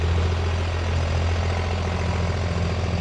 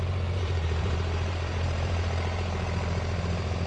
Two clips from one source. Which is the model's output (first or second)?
second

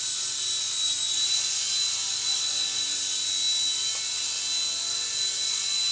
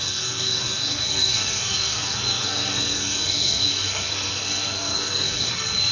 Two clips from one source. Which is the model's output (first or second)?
second